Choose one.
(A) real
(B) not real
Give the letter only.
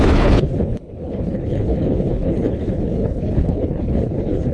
B